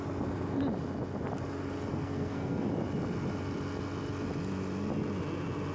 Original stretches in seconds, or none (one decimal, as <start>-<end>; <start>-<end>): 0.0-1.9; 2.7-5.7